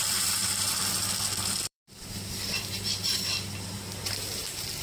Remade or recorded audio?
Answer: remade